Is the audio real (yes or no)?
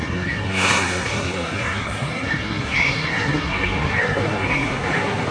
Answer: no